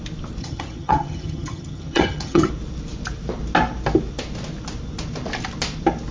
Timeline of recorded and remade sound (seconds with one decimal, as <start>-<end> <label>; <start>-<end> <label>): 0.0-0.4 recorded; 0.4-2.5 remade; 2.5-6.1 recorded